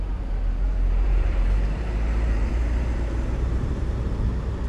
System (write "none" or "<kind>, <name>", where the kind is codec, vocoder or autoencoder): vocoder, BigVGAN v2